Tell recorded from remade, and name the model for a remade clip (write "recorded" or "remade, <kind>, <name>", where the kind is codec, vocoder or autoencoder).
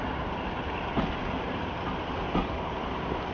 recorded